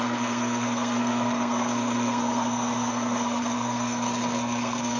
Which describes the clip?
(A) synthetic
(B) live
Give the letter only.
A